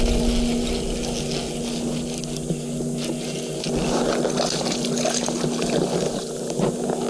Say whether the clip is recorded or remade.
recorded